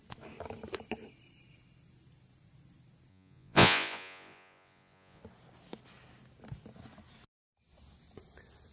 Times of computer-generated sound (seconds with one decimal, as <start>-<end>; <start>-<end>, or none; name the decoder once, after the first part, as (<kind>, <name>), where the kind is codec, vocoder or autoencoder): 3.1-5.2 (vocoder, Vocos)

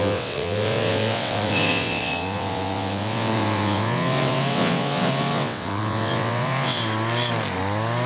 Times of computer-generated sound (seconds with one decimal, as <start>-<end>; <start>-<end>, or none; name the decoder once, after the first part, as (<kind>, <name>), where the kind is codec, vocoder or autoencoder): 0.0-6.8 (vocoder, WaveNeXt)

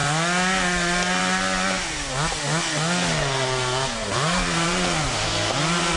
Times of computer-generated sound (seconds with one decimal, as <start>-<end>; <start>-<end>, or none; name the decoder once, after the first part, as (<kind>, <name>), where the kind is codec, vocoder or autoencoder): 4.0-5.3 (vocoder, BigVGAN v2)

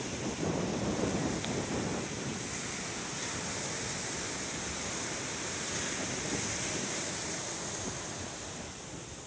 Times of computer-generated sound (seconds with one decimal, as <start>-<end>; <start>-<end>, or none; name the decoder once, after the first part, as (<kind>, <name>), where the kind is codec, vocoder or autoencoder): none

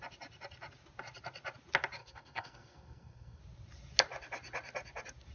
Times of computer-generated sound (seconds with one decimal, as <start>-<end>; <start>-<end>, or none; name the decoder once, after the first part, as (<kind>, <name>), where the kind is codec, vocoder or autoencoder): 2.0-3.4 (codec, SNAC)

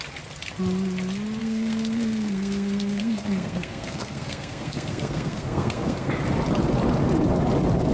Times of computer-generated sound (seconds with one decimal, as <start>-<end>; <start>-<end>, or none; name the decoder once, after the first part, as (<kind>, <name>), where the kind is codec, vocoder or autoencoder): 1.4-6.1 (codec, SNAC)